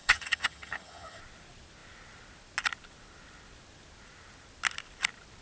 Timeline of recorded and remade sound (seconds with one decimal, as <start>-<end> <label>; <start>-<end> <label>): 0.0-1.2 remade; 1.2-5.4 recorded